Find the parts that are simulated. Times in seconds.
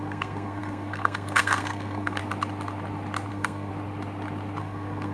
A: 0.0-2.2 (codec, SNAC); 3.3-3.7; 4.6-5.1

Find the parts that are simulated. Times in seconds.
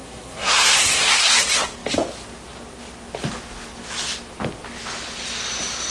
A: 0.0-1.1 (codec, SNAC)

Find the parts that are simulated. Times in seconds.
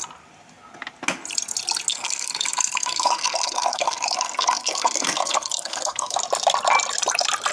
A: 1.9-6.2 (codec, SNAC)